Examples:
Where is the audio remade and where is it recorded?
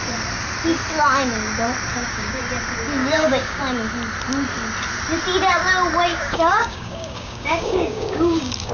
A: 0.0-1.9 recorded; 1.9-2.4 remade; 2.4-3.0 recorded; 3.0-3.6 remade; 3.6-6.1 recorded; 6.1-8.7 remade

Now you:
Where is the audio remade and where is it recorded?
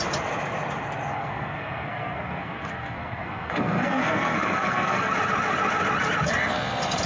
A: 0.0-1.1 recorded; 1.1-5.1 remade; 5.1-7.1 recorded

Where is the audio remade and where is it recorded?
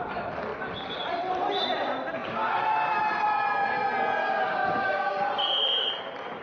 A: 0.0-4.2 recorded; 4.2-5.2 remade; 5.2-6.4 recorded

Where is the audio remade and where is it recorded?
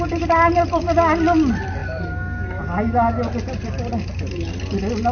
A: 0.0-5.1 recorded